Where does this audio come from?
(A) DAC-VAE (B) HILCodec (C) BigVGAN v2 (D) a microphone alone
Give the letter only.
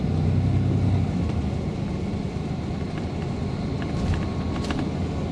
D